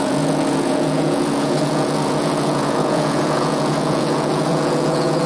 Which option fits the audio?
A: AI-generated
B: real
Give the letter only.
A